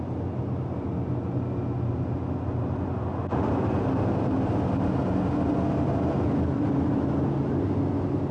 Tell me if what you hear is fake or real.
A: real